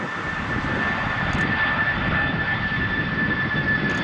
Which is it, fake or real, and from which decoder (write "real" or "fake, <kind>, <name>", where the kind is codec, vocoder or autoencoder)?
real